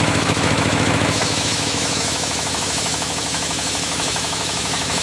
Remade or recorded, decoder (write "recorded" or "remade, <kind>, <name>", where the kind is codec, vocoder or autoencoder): remade, autoencoder, DAC-VAE